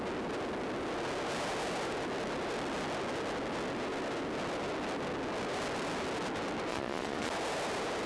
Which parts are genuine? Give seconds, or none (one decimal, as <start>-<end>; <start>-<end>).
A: 0.0-6.7; 7.3-8.1

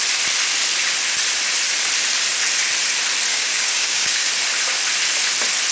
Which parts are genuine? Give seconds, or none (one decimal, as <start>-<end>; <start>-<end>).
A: 0.0-3.3; 4.3-5.7

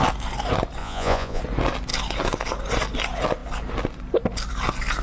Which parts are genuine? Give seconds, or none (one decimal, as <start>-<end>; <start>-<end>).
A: 0.0-0.8; 1.4-5.0

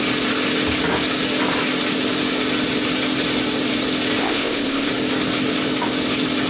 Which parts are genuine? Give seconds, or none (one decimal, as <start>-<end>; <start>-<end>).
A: 0.0-4.2; 4.9-6.5

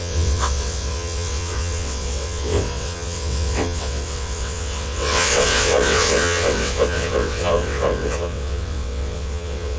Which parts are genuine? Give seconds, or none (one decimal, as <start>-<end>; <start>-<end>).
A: none

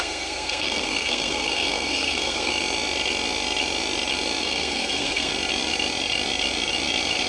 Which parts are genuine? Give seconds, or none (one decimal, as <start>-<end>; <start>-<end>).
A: 2.5-4.4; 5.3-7.3

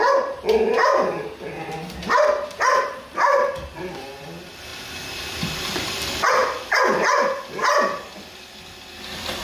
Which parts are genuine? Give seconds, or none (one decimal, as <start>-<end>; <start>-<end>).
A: 0.0-4.7; 5.9-9.4

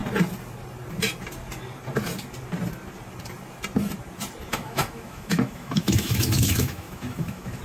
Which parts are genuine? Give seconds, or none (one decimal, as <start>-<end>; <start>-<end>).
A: 0.0-4.5